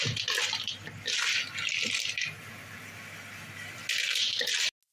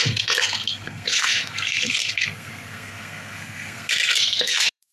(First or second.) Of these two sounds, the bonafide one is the first